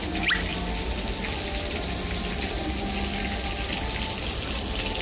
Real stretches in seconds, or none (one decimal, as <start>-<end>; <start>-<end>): 0.0-5.0